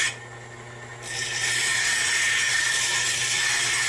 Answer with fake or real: real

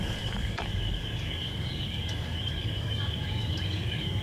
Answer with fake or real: fake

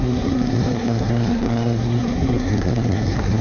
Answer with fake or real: fake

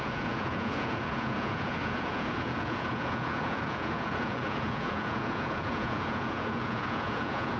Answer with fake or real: fake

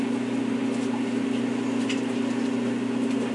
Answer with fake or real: real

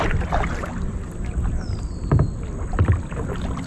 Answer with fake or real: real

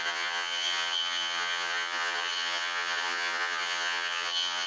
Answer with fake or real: fake